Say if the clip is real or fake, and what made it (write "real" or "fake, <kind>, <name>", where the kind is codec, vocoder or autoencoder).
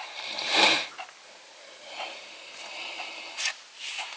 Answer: real